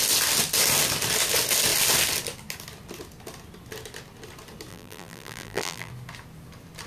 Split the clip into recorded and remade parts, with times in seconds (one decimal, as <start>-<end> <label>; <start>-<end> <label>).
0.0-4.7 recorded; 4.7-5.9 remade; 5.9-6.9 recorded